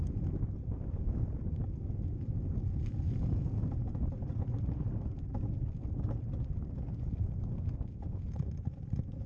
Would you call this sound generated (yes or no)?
no